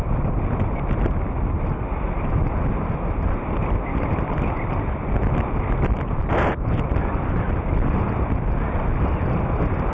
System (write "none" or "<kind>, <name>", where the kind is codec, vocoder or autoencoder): none